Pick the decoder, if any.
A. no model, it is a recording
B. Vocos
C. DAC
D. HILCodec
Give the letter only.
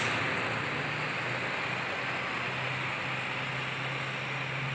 A